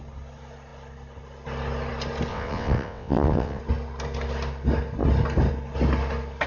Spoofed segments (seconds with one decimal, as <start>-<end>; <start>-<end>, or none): 2.3-3.6